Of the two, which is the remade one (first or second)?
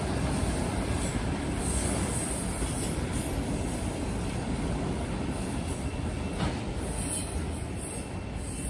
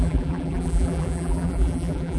second